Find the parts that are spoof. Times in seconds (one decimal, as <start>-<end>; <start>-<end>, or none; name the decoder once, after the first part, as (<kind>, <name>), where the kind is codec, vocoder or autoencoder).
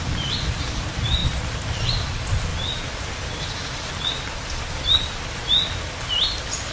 0.0-1.2 (vocoder, BigVGAN v2); 1.7-2.5